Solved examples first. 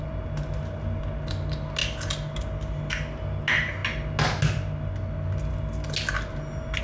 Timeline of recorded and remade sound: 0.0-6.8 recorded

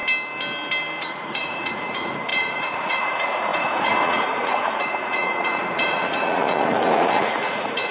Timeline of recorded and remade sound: 0.0-1.0 recorded; 1.0-7.9 remade

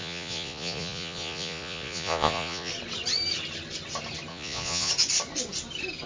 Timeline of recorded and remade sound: 0.0-2.7 remade; 2.7-4.3 recorded; 4.3-4.9 remade; 4.9-6.1 recorded